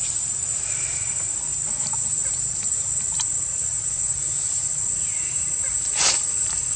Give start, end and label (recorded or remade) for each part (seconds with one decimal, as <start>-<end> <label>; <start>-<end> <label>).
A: 0.0-6.8 recorded